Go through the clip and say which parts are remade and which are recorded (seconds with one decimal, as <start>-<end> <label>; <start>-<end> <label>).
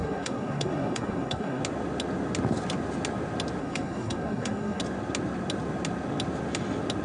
0.0-1.6 remade; 1.6-3.6 recorded; 3.6-4.8 remade; 4.8-7.0 recorded